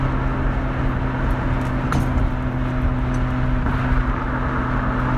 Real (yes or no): yes